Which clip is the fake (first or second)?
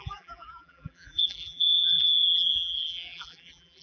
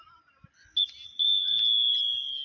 first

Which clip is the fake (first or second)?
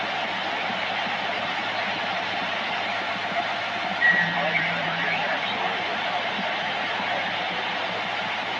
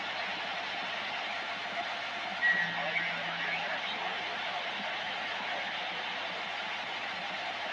first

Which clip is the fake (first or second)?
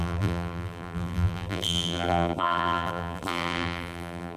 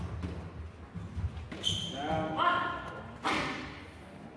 first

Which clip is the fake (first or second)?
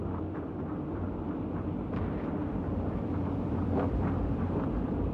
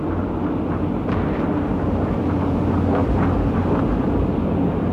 first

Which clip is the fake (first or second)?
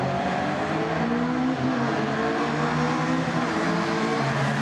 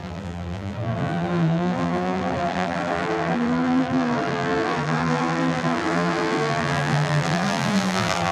second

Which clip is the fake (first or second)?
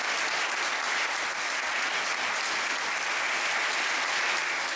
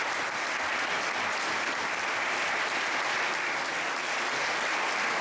second